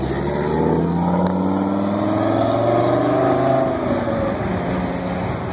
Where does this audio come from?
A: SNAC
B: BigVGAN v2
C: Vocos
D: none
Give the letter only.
D